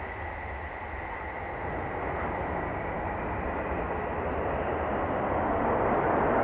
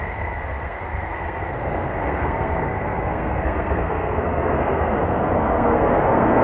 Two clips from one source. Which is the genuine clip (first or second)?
first